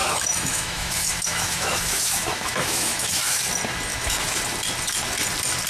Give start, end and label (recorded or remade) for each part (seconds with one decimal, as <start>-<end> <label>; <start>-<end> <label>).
0.0-3.4 remade; 3.4-3.9 recorded; 3.9-4.4 remade; 4.4-5.7 recorded